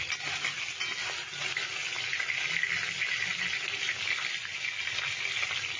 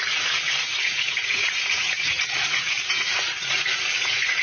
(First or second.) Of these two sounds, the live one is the first